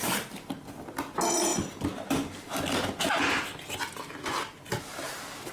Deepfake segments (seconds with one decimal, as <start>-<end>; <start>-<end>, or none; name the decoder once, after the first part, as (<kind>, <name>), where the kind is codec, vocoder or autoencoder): none